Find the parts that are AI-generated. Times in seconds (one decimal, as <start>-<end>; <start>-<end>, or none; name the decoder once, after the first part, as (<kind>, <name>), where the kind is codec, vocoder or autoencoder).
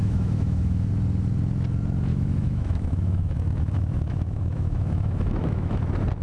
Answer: 0.0-0.9 (autoencoder, DAC-VAE); 2.1-5.8